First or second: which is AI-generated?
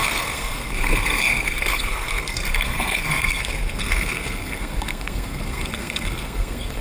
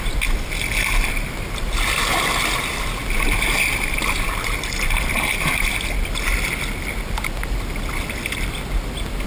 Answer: first